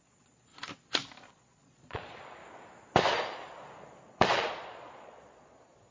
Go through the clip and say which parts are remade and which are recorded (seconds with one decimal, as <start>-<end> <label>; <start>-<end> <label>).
0.0-0.5 remade; 0.5-1.3 recorded; 1.3-2.4 remade; 2.4-4.0 recorded; 4.0-5.9 remade